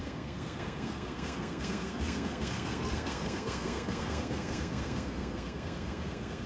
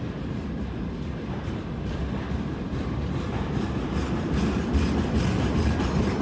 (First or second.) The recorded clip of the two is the second